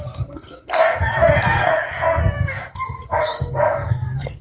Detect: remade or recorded remade